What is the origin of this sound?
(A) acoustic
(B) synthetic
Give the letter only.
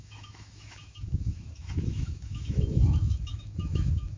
B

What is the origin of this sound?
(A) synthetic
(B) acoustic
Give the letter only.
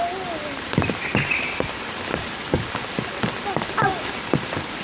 B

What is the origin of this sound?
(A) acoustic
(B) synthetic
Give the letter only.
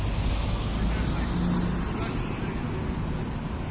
A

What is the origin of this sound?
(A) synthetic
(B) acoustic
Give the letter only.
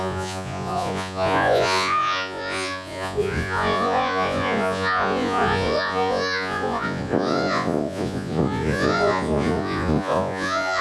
A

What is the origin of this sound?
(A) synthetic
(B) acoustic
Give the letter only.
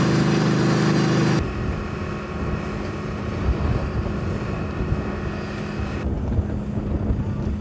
B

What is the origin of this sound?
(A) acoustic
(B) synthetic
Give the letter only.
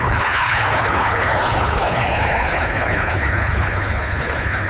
B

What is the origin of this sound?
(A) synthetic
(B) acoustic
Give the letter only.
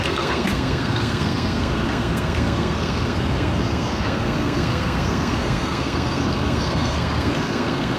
A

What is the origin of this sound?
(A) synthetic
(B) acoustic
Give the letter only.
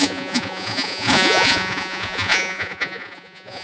A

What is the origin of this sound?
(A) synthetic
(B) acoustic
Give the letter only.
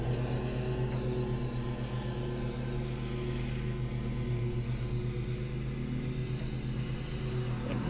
B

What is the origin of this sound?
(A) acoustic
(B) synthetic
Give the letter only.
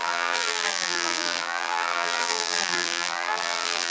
B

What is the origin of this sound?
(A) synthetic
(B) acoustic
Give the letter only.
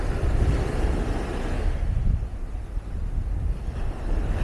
B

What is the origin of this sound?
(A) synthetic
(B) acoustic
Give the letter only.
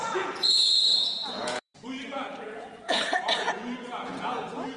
A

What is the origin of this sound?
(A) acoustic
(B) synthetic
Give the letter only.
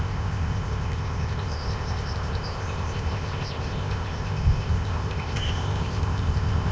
B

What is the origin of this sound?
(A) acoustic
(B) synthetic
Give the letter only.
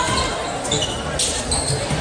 A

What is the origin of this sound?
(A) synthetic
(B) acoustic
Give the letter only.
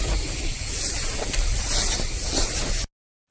B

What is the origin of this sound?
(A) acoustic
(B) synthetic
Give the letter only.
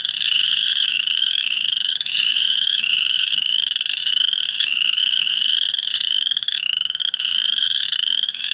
B